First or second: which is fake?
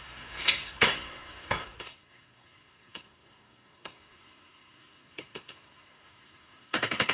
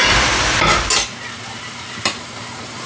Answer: first